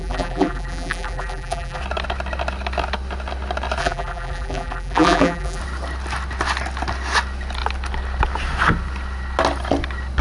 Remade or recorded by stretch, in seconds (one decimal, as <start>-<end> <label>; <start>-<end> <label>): 0.0-1.8 remade; 1.8-3.8 recorded; 3.8-5.6 remade; 5.6-10.2 recorded